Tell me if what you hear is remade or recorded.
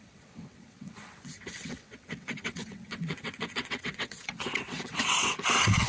remade